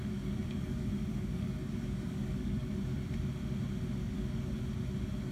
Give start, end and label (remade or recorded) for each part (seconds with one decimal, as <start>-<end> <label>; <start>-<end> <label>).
0.0-2.7 remade; 2.7-4.0 recorded; 4.0-4.6 remade; 4.6-5.3 recorded